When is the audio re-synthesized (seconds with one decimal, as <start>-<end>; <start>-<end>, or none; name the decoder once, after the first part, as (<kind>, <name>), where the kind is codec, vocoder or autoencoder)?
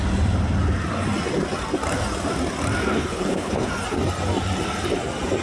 2.9-3.7 (codec, HILCodec)